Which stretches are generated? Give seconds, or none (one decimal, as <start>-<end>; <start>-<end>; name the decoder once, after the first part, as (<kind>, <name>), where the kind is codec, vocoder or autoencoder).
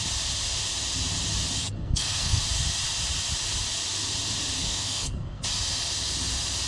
1.6-2.4 (codec, SNAC); 4.6-5.4